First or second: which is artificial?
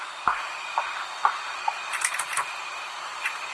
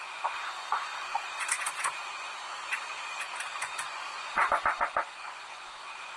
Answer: second